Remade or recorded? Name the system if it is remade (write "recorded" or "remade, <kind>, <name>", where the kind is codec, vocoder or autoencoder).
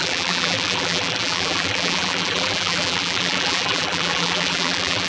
remade, vocoder, BigVGAN v2